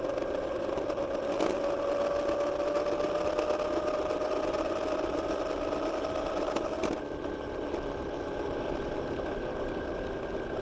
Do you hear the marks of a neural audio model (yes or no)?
no